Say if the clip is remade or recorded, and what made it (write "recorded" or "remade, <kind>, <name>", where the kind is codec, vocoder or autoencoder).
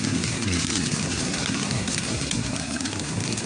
remade, codec, SNAC